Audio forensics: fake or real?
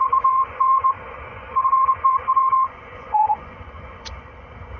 fake